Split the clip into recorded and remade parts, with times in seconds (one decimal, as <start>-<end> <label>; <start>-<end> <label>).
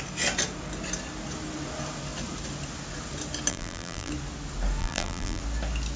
0.0-3.5 recorded; 3.5-4.1 remade; 4.1-4.8 recorded; 4.8-5.4 remade; 5.4-6.0 recorded